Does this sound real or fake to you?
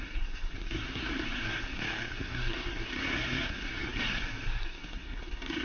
fake